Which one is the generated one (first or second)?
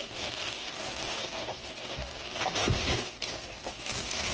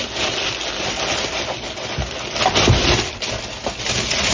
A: first